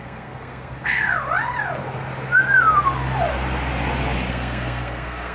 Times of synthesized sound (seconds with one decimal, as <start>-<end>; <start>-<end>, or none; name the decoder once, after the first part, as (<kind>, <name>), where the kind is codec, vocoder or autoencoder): 0.0-1.1 (codec, SNAC); 4.3-5.3